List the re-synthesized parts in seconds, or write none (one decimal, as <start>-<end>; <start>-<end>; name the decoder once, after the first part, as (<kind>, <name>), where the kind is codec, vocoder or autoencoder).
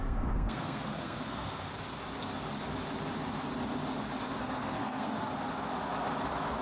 0.0-1.7 (codec, SNAC); 4.4-5.3